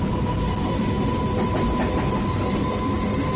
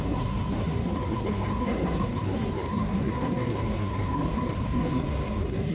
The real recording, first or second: first